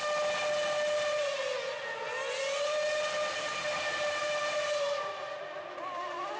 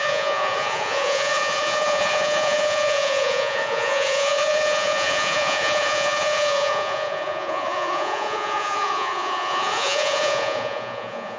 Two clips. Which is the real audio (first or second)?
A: first